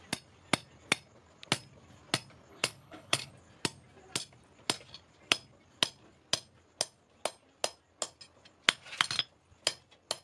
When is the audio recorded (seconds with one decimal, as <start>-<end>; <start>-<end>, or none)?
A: 0.0-2.5; 3.3-10.2